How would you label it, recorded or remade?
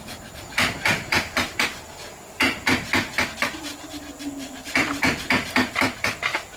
remade